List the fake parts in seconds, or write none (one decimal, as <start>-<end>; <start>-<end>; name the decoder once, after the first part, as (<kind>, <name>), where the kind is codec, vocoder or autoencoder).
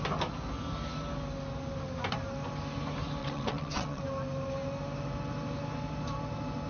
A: 3.2-4.0 (vocoder, WaveNeXt)